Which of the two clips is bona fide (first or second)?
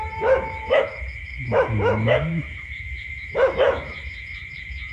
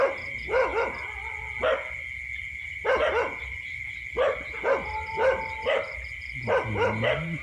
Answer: second